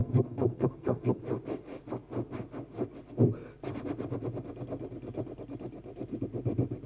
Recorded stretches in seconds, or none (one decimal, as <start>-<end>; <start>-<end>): 1.2-6.9